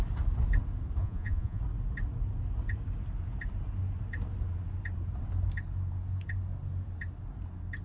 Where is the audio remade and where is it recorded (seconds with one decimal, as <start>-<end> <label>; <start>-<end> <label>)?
0.0-1.0 recorded; 1.0-1.6 remade; 1.6-7.8 recorded